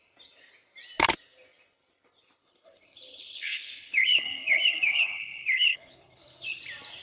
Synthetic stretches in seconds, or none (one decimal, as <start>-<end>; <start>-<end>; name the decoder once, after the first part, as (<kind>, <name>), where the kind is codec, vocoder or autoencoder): 2.4-6.6 (codec, HILCodec)